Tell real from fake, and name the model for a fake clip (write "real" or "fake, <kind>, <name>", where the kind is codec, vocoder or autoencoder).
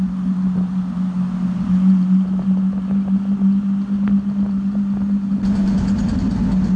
real